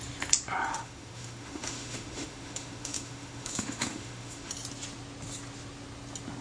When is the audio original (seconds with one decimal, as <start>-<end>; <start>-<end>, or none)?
0.0-0.7; 4.5-6.4